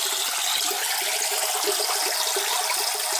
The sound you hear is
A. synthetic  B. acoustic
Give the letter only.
B